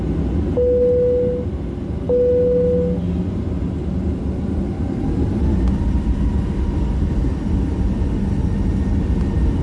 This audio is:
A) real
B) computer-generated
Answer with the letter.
A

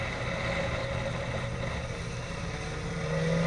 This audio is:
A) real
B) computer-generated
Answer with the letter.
A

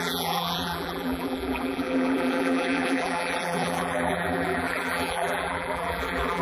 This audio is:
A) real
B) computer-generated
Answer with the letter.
B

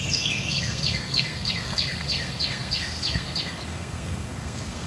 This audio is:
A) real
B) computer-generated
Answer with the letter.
B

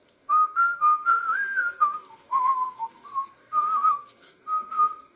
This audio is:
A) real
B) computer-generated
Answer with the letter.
B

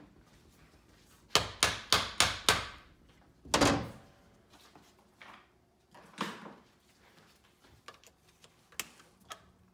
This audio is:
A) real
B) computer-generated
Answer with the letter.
A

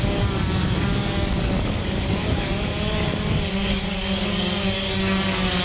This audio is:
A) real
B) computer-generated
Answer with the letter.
B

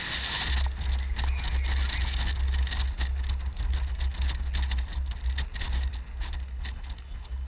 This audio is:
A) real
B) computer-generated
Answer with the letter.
A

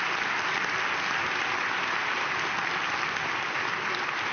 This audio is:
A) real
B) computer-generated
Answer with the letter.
A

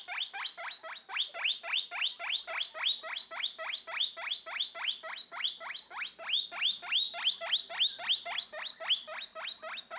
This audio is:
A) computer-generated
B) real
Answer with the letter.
B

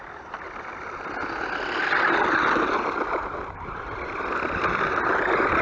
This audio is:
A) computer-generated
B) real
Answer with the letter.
B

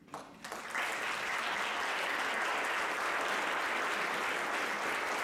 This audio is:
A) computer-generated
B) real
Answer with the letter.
B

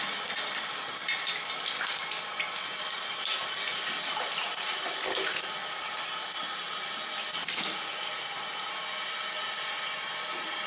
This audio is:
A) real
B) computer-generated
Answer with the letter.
A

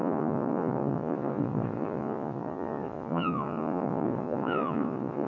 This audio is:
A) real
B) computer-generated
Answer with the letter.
B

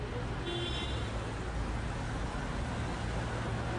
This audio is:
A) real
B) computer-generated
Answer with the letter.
A